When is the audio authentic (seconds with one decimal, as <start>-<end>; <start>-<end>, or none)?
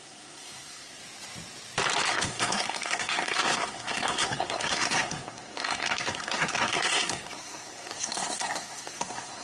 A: 1.0-2.1